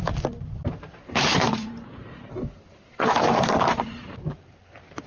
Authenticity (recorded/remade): remade